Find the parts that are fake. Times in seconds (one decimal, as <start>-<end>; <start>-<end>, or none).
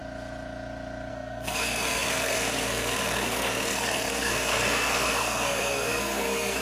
1.1-6.6